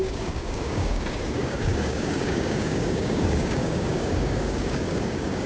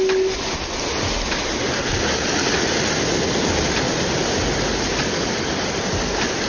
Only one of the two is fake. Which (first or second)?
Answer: first